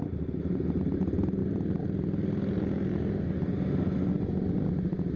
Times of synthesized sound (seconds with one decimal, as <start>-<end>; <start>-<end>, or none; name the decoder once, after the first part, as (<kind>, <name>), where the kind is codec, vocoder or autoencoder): none